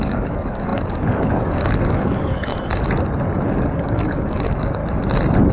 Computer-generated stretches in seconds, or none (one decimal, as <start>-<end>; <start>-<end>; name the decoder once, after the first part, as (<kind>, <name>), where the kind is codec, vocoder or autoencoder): 0.0-2.5 (codec, DAC); 3.5-4.8